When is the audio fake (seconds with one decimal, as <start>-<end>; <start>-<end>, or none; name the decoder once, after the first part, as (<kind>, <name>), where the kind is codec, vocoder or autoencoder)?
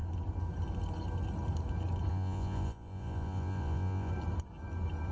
2.1-4.1 (vocoder, Vocos)